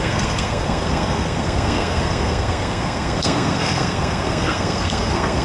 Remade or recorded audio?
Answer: remade